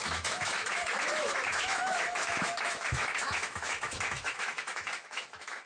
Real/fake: fake